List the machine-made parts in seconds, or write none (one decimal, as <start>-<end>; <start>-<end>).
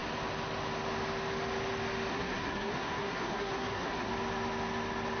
2.1-4.1